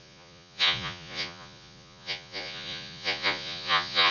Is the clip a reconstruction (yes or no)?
yes